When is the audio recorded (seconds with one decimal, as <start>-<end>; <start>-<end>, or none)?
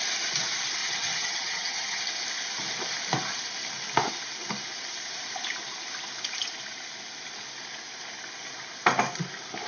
0.0-0.8; 2.0-9.7